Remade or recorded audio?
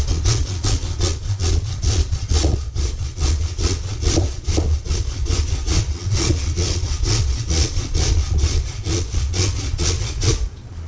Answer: remade